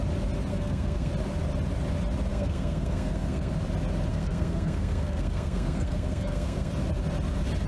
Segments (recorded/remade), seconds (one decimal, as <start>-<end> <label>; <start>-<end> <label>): 0.0-0.5 recorded; 0.5-1.1 remade; 1.1-2.3 recorded; 2.3-3.5 remade; 3.5-4.1 recorded; 4.1-6.7 remade; 6.7-7.7 recorded